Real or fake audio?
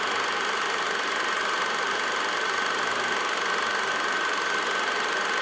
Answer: real